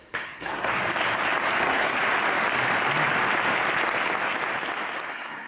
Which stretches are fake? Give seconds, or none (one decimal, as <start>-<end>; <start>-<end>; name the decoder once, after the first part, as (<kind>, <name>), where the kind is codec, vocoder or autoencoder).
0.0-0.8 (codec, SNAC); 1.6-2.0; 5.1-5.5

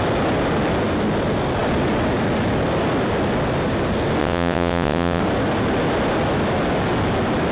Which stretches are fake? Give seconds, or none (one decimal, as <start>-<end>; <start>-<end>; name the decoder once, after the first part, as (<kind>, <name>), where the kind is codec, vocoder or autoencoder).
4.2-5.2 (vocoder, WaveNeXt)

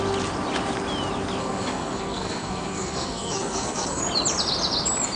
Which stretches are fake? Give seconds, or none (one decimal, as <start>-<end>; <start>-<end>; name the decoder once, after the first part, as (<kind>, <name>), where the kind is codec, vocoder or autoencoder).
1.4-4.0 (codec, SNAC)

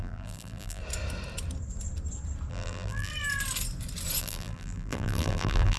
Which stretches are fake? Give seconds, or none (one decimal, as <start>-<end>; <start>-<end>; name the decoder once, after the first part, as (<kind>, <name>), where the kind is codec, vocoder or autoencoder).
0.0-0.8 (vocoder, BigVGAN v2); 2.5-3.1; 4.2-5.8

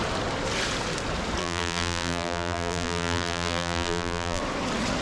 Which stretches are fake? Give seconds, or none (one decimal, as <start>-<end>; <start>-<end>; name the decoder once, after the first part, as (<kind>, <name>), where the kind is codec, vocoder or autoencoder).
1.4-4.4 (vocoder, BigVGAN v2)